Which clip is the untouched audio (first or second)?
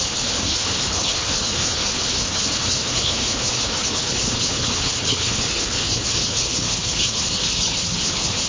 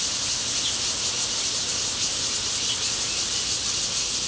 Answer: second